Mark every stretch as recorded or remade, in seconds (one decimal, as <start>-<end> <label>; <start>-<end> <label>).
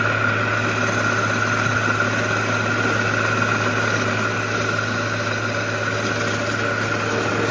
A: 0.0-7.5 recorded